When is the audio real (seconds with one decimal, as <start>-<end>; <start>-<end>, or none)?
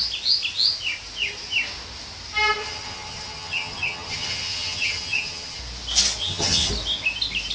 0.0-2.6; 5.6-6.2; 6.7-7.5